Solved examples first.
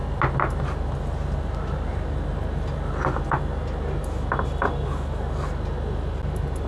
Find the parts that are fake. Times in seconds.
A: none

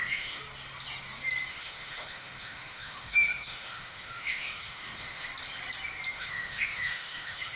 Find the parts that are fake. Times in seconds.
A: 0.0-0.4 (autoencoder, DAC-VAE); 1.5-5.3; 6.1-7.6

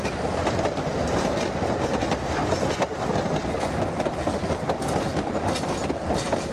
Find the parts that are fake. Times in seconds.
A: none

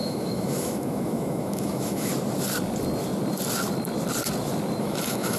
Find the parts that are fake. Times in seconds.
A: 0.0-2.1 (autoencoder, DAC-VAE); 4.8-5.4

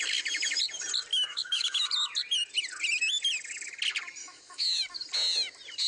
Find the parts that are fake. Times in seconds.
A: 1.1-1.9 (autoencoder, DAC-VAE); 4.2-4.8